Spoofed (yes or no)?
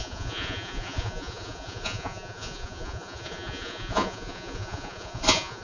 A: yes